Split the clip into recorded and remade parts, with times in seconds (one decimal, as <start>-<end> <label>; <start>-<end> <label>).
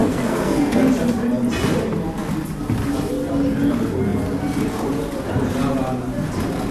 0.0-0.8 remade; 0.8-6.7 recorded